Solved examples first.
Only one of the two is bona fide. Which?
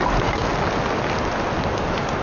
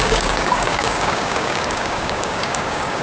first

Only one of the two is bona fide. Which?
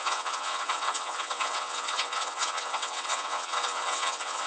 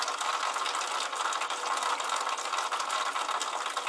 second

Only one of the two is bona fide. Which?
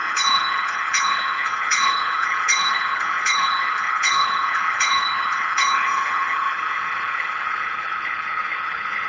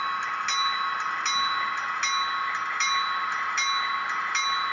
second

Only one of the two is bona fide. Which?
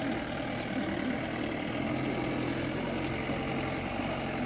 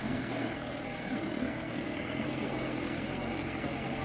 first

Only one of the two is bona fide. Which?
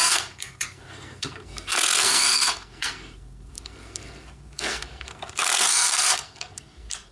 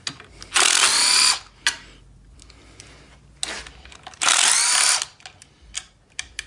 second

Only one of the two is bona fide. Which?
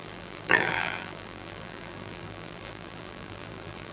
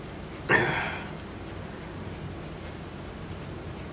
second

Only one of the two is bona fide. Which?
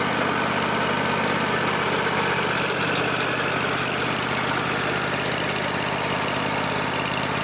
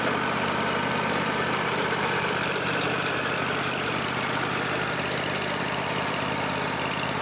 first